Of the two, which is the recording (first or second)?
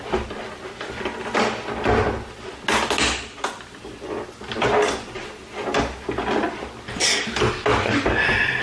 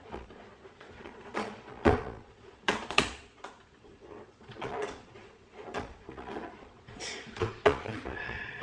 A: first